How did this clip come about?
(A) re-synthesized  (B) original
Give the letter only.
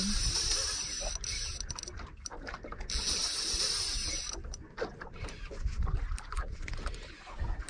B